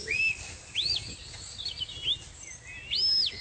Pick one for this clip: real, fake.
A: real